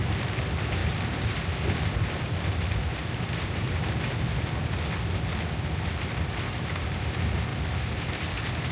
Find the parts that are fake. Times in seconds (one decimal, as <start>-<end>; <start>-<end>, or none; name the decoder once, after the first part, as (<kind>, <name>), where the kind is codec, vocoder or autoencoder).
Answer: 0.8-3.8 (vocoder, BigVGAN v2)